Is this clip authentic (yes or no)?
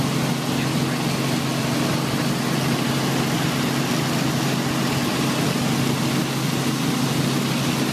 yes